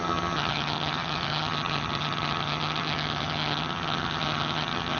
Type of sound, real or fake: fake